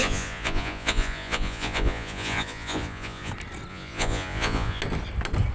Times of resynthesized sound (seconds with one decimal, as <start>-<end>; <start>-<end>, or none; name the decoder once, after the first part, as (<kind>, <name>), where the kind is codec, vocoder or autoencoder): 0.0-3.3 (vocoder, Vocos); 3.7-4.8